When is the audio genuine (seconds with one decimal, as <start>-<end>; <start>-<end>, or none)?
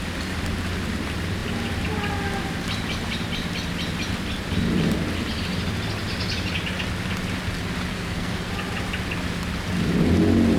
0.0-7.9; 8.5-10.6